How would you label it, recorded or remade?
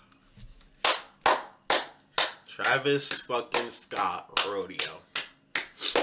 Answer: recorded